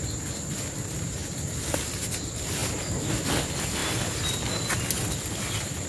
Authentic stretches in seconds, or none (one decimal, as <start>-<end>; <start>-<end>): 0.0-5.9